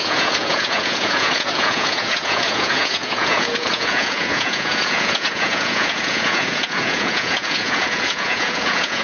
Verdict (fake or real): fake